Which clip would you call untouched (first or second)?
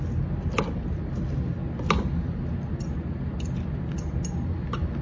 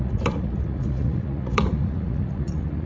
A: first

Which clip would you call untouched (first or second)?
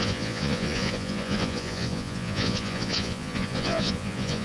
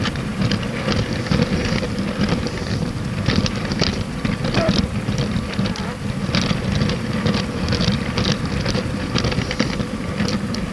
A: second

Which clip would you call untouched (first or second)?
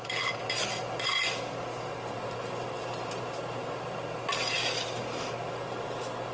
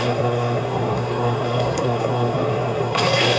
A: first